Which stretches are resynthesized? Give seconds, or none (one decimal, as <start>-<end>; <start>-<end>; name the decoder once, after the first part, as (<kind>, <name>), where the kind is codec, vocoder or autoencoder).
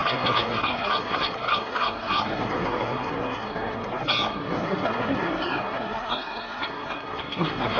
0.0-7.8 (codec, SNAC)